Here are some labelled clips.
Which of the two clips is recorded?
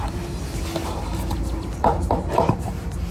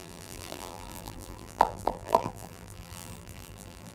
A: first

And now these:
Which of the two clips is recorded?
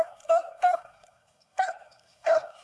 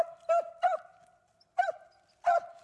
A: second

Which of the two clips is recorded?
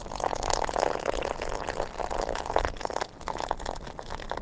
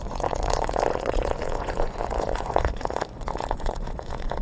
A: first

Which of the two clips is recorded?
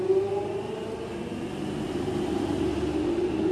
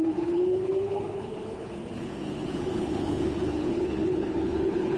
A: first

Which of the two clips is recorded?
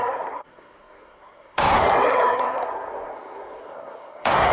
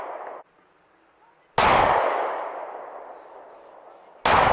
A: second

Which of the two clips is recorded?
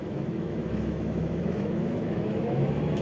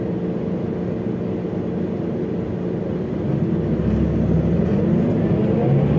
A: second